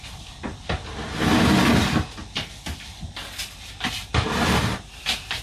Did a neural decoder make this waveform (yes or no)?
no